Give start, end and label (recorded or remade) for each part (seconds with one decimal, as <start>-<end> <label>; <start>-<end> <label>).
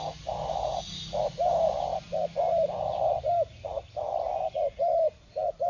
0.0-5.7 recorded